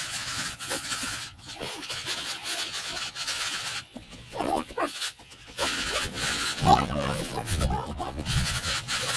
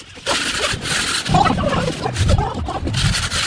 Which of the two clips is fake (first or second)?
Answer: first